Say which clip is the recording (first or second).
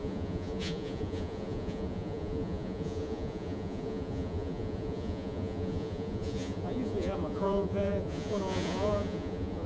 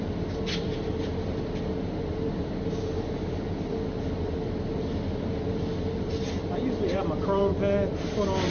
second